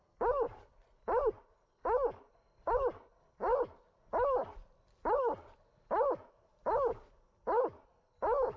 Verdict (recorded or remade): recorded